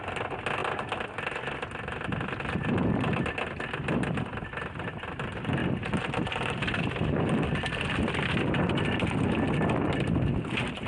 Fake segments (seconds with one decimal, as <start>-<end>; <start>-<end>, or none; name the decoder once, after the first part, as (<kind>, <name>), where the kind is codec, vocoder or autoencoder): none